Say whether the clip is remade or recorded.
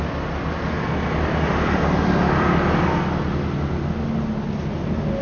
recorded